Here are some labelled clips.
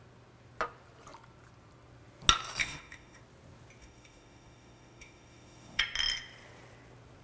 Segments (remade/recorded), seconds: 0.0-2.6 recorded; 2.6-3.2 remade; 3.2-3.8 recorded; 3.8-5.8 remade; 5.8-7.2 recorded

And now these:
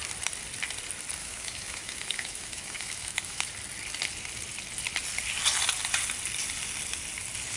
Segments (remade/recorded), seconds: 0.0-1.2 recorded; 1.2-3.5 remade; 3.5-7.6 recorded

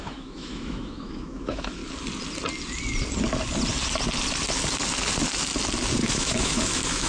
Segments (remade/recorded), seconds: 0.0-1.8 remade; 1.8-6.1 recorded; 6.1-7.1 remade

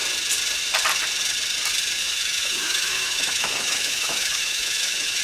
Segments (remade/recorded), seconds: 0.0-2.0 recorded; 2.0-5.2 remade

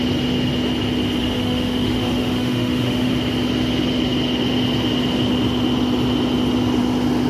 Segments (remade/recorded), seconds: 0.0-1.2 recorded; 1.2-3.1 remade; 3.1-7.3 recorded

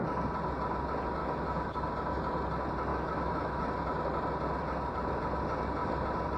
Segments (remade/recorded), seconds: 0.0-1.2 recorded; 1.2-1.9 remade; 1.9-2.9 recorded; 2.9-3.6 remade; 3.6-6.4 recorded

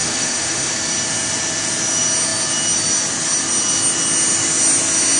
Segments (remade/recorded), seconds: 0.0-0.7 remade; 0.7-5.2 recorded